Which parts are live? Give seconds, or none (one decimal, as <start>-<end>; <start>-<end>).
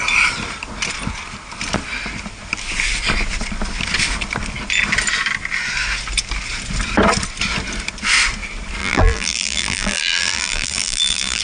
0.0-8.8